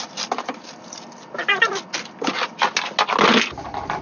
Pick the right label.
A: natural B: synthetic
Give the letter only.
A